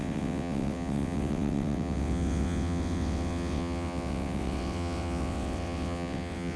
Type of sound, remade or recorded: remade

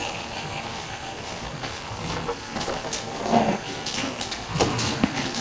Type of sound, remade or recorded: remade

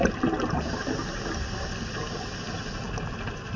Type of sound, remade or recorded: recorded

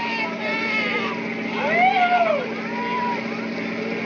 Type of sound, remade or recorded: recorded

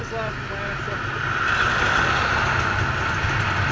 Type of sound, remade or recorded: recorded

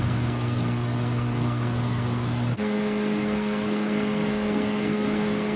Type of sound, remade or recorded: remade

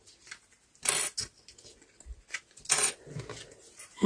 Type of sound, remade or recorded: recorded